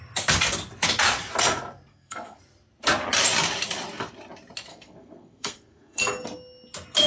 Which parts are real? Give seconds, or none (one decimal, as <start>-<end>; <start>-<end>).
0.0-1.9; 2.4-4.7; 6.0-7.1